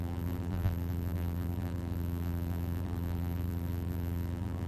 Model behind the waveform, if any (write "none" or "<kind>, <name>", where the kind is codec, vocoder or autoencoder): vocoder, BigVGAN v2